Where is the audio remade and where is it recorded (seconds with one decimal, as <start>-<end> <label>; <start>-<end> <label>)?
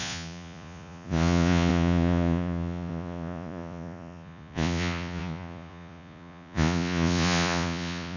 0.0-8.2 remade